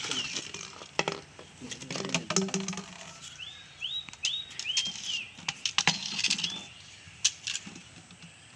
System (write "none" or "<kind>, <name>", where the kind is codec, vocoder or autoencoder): none